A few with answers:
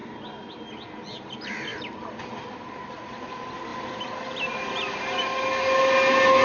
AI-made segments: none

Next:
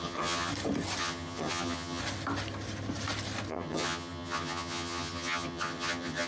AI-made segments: 0.0-0.5; 1.0-2.0; 3.5-6.3

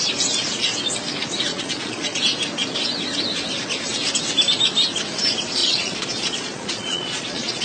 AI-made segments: 1.5-2.2; 5.6-7.6